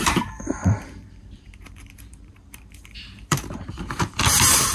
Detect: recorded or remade remade